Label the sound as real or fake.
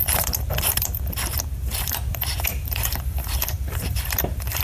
fake